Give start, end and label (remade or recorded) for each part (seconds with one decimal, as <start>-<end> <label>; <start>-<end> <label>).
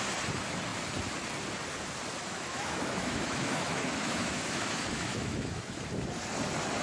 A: 0.0-2.2 recorded; 2.2-5.8 remade; 5.8-6.8 recorded